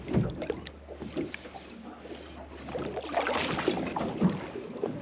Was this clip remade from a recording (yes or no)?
no